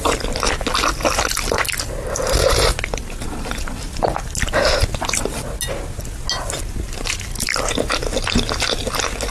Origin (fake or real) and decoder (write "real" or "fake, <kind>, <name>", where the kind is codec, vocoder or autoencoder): real